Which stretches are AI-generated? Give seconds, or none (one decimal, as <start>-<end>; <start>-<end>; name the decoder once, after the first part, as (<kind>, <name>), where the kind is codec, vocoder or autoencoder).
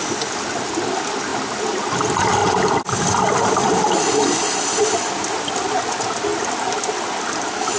none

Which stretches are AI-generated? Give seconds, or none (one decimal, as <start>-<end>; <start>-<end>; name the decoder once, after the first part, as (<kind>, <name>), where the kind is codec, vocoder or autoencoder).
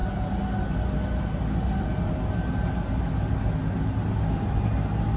none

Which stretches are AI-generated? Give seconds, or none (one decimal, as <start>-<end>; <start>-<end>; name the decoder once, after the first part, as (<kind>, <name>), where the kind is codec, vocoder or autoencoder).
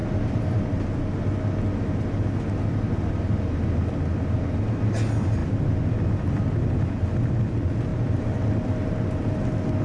none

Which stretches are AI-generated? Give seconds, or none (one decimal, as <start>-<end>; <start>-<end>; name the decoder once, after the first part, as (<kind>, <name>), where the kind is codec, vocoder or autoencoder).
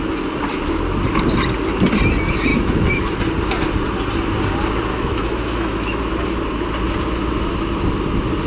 2.5-3.2 (autoencoder, DAC-VAE); 4.9-6.0